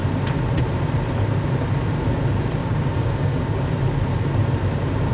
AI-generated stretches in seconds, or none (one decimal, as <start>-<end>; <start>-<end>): 2.6-3.6